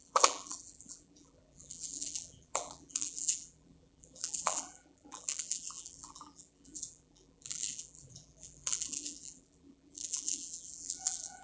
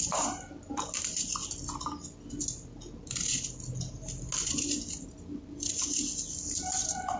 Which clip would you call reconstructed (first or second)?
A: first